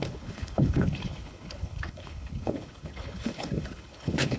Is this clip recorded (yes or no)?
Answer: no